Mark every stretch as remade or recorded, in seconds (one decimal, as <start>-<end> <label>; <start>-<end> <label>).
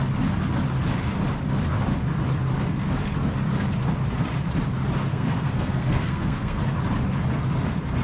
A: 0.0-5.1 recorded; 5.1-6.6 remade; 6.6-8.0 recorded